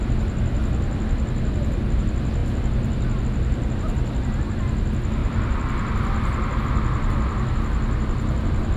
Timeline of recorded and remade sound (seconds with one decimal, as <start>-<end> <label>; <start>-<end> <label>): 0.0-5.2 recorded; 5.2-6.6 remade; 6.6-8.8 recorded